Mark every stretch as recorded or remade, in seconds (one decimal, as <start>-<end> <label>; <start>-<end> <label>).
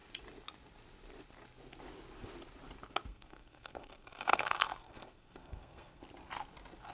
0.0-3.1 recorded; 3.1-6.0 remade; 6.0-6.9 recorded